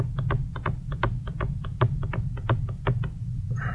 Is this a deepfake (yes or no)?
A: no